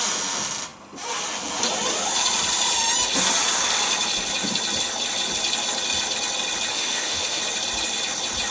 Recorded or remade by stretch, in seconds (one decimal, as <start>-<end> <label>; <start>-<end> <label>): 0.0-6.7 recorded; 6.7-7.4 remade; 7.4-8.5 recorded